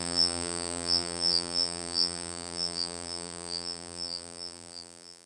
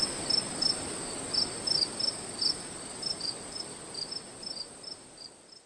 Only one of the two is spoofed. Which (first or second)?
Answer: first